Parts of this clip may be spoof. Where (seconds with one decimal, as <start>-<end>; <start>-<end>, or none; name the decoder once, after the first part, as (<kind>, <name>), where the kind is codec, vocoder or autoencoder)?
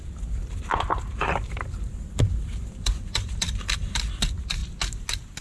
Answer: 0.9-4.1 (vocoder, BigVGAN v2)